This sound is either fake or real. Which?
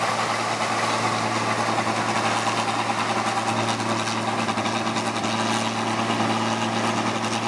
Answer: real